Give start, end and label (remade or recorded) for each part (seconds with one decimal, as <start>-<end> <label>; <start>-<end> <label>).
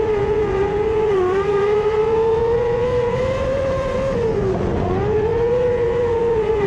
0.0-6.7 remade